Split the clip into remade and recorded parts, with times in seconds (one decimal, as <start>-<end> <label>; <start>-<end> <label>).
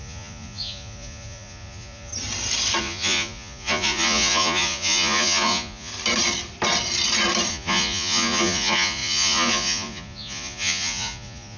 0.0-2.1 remade; 2.1-2.8 recorded; 2.8-5.9 remade; 5.9-7.5 recorded; 7.5-11.6 remade